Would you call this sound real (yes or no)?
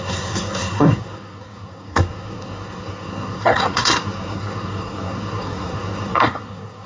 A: no